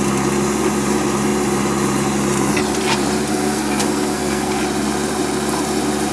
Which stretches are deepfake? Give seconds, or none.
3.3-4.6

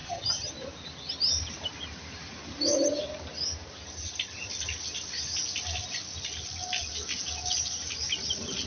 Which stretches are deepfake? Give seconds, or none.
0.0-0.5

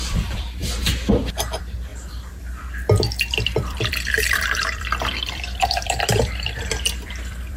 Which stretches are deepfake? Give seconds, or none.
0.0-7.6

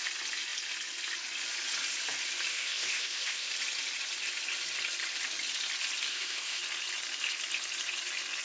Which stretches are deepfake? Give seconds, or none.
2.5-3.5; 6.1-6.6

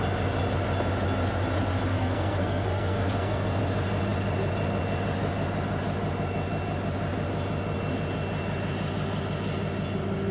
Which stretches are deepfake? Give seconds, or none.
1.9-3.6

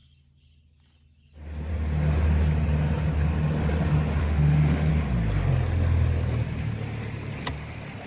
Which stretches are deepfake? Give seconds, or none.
4.2-4.9

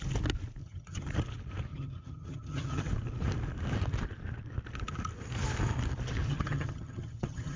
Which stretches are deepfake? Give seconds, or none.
0.6-1.1; 1.7-2.9; 6.3-7.6

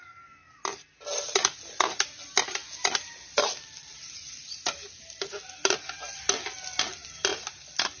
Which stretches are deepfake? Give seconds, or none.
none